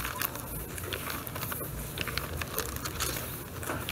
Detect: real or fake real